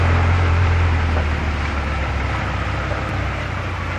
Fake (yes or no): yes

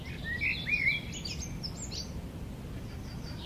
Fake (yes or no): no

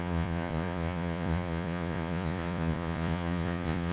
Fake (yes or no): yes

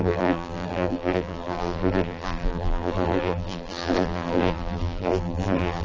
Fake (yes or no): yes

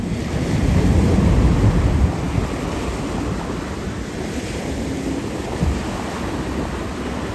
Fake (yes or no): no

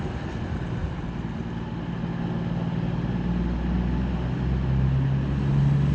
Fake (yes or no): no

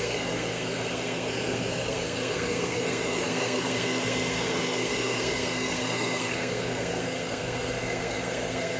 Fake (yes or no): yes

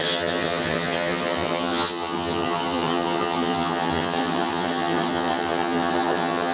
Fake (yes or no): yes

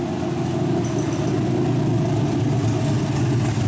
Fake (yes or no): no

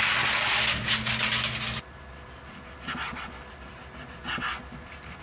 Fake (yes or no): no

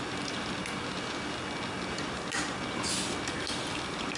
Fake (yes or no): no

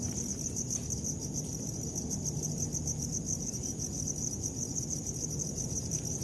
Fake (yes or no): no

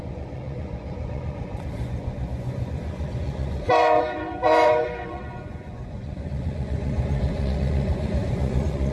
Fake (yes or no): yes